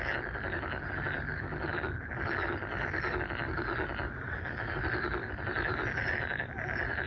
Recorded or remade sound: recorded